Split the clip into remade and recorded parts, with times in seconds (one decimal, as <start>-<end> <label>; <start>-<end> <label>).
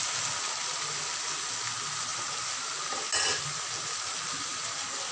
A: 0.0-2.1 recorded; 2.1-2.8 remade; 2.8-4.5 recorded; 4.5-5.1 remade